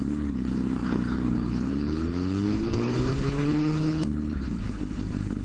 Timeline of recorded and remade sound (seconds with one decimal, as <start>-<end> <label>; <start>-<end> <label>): 0.0-5.4 remade